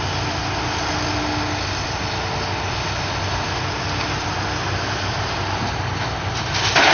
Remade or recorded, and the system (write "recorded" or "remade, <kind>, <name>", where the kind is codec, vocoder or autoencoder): recorded